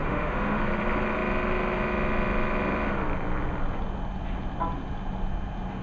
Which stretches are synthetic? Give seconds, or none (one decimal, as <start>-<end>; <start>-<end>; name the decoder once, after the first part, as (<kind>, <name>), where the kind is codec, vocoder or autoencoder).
0.0-0.6 (autoencoder, DAC-VAE)